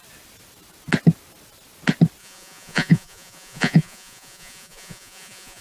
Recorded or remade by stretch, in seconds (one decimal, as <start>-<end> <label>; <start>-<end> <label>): 0.0-2.2 recorded; 2.2-5.6 remade